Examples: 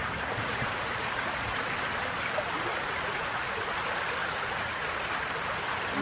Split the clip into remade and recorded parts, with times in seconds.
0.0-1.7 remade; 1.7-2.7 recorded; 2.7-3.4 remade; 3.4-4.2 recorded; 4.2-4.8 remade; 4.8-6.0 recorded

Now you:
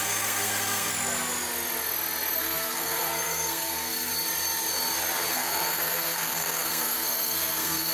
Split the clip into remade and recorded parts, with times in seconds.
0.0-0.9 remade; 0.9-2.4 recorded; 2.4-4.1 remade; 4.1-5.3 recorded; 5.3-7.9 remade